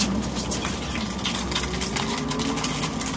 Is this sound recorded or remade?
recorded